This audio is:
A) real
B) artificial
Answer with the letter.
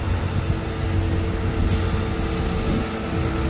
A